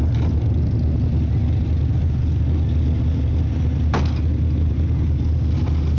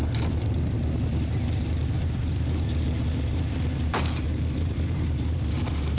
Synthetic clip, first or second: second